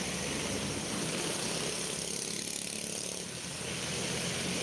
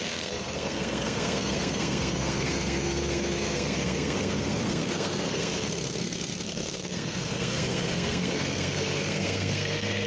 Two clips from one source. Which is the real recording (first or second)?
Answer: first